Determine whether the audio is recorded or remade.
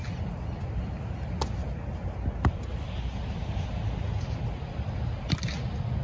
recorded